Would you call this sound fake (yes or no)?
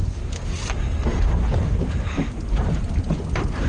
yes